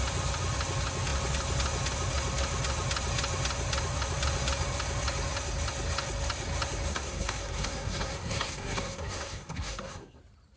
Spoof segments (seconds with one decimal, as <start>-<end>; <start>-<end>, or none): 6.9-10.2